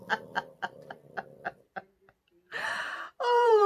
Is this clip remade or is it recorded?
remade